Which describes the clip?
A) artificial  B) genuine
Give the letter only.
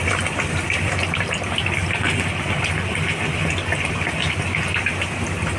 B